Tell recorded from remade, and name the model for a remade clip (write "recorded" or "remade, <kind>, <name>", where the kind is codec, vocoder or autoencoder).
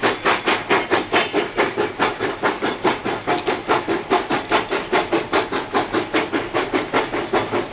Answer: recorded